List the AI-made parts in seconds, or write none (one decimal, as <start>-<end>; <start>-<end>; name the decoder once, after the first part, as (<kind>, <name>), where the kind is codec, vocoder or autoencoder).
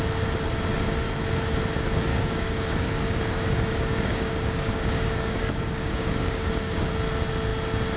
2.1-6.9 (codec, DAC)